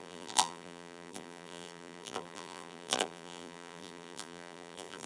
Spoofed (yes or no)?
yes